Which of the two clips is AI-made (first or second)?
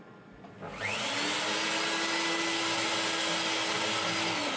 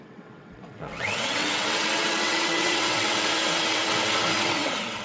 second